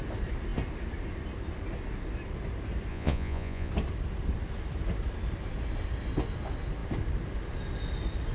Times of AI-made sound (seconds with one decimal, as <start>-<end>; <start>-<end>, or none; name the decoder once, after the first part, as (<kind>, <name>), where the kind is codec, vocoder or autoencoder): 2.9-3.7 (vocoder, Vocos)